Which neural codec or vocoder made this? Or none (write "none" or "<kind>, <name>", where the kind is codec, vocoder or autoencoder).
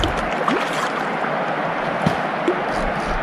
none